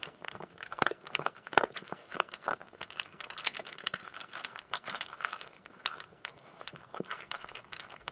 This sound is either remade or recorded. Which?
remade